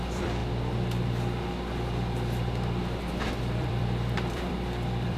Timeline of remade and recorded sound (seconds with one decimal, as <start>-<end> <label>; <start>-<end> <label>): 0.0-0.4 remade; 0.4-3.4 recorded; 3.4-5.2 remade